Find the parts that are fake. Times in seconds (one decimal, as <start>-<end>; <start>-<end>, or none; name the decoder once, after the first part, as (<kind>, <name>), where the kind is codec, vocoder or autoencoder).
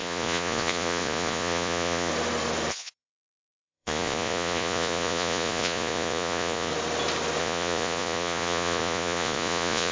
0.0-2.1 (vocoder, Vocos); 2.7-6.7; 7.4-9.9